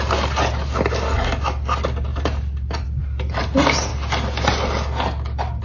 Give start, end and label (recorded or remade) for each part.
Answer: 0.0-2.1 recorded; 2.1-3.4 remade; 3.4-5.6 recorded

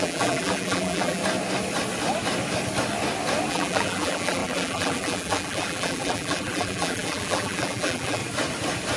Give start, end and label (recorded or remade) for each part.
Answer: 0.0-1.2 remade; 1.2-3.5 recorded; 3.5-8.2 remade; 8.2-9.0 recorded

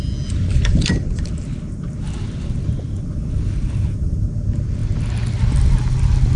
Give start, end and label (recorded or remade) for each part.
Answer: 0.0-6.4 recorded

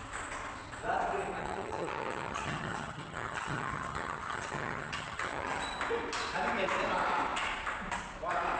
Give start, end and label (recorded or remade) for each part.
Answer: 0.0-1.4 recorded; 1.4-5.6 remade; 5.6-8.6 recorded

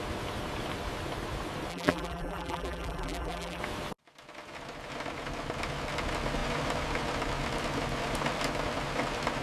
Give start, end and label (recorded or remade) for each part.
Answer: 0.0-1.7 recorded; 1.7-3.6 remade; 3.6-9.4 recorded

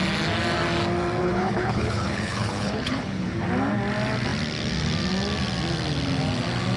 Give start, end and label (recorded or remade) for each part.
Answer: 0.0-1.2 recorded; 1.2-3.3 remade; 3.3-6.8 recorded